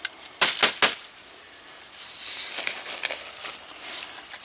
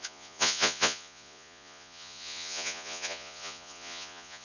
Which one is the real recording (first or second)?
first